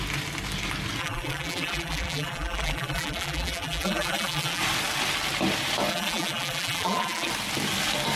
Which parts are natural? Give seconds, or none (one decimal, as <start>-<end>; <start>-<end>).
0.0-1.0; 4.6-5.9; 7.3-8.2